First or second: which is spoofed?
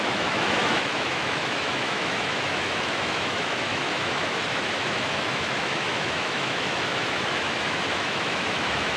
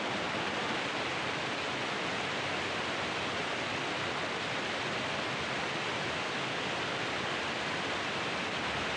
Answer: first